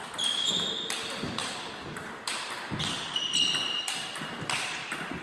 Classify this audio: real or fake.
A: fake